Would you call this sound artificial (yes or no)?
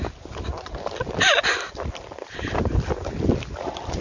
no